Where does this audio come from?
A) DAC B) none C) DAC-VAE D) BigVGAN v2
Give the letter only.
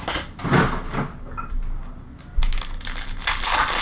B